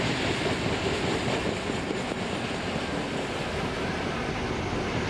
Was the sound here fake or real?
real